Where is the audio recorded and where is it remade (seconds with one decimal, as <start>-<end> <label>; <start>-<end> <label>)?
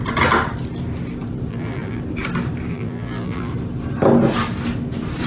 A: 0.0-1.5 recorded; 1.5-2.0 remade; 2.0-2.7 recorded; 2.7-3.5 remade; 3.5-5.3 recorded